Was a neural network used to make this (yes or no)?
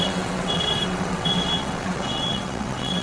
yes